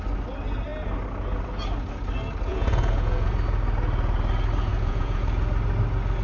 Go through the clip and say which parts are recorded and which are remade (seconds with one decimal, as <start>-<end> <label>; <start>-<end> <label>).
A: 0.0-2.5 recorded; 2.5-3.3 remade; 3.3-4.7 recorded; 4.7-5.2 remade; 5.2-6.2 recorded